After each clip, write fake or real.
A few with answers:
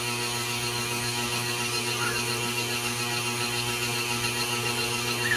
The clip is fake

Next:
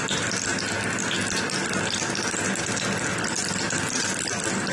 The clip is real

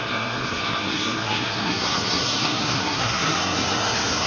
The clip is fake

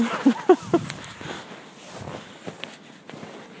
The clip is real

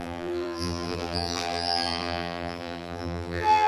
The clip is fake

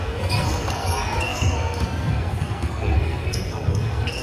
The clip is fake